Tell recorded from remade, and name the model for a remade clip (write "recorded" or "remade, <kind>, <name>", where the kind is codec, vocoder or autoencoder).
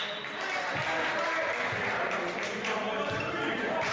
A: remade, vocoder, BigVGAN v2